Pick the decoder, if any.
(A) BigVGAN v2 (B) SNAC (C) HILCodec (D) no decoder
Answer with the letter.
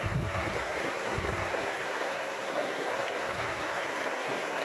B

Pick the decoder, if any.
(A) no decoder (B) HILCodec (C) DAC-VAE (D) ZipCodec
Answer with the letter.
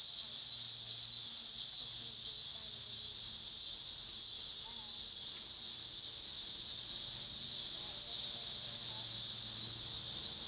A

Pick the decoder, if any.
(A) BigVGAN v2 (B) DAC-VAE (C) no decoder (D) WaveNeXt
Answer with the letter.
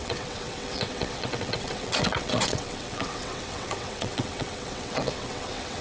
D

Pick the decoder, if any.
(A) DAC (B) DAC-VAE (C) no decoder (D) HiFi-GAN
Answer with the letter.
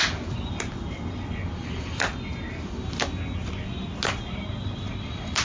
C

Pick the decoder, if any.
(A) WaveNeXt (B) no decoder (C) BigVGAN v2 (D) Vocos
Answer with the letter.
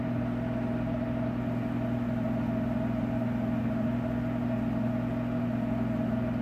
B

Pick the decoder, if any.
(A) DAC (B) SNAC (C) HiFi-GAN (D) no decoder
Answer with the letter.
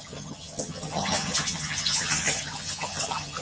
C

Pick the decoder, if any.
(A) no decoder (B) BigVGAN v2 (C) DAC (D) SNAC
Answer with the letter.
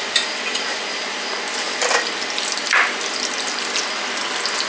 A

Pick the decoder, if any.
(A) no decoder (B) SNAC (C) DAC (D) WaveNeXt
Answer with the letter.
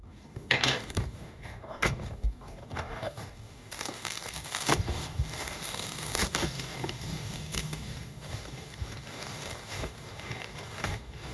C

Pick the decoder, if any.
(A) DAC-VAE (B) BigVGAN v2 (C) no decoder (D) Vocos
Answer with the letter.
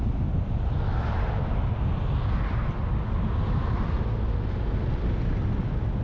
C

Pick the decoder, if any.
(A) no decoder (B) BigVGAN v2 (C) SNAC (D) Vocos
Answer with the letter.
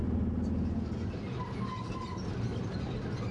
A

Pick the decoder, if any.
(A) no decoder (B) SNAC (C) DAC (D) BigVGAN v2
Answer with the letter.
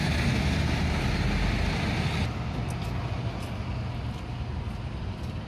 A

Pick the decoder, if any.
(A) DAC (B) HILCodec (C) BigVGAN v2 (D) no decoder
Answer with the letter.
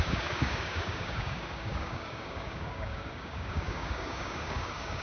A